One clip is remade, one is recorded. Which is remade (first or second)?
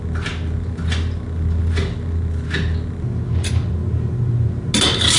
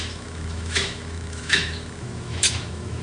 second